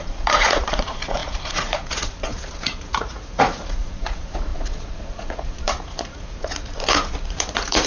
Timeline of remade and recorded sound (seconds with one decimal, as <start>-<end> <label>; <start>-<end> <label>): 0.0-7.9 remade

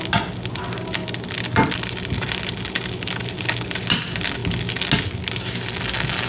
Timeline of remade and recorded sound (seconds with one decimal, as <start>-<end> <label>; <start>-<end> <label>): 0.0-6.3 recorded

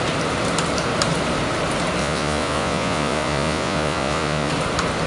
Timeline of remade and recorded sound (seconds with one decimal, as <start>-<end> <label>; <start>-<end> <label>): 0.0-2.0 recorded; 2.0-4.5 remade; 4.5-5.1 recorded

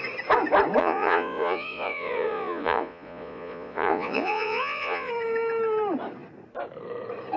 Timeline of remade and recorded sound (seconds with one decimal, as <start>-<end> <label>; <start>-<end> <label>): 0.0-0.8 recorded; 0.8-5.1 remade; 5.1-7.4 recorded

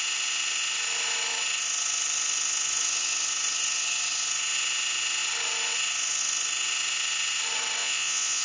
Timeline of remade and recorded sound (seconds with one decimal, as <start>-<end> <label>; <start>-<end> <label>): 0.0-7.8 recorded; 7.8-8.4 remade

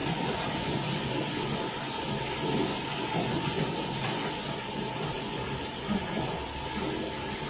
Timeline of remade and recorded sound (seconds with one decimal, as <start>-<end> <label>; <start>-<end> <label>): 0.0-2.1 remade; 2.1-2.7 recorded; 2.7-6.4 remade; 6.4-7.5 recorded

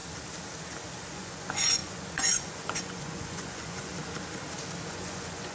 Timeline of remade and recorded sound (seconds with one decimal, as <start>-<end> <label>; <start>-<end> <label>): 0.0-1.1 recorded; 1.1-3.9 remade; 3.9-4.9 recorded; 4.9-5.5 remade